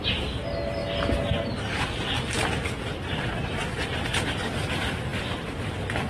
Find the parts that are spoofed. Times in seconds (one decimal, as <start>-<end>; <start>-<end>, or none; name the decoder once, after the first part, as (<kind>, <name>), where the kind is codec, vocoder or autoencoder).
0.0-5.1 (vocoder, BigVGAN v2)